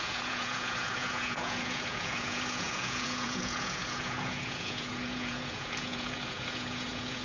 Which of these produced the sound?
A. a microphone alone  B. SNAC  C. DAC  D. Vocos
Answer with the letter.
D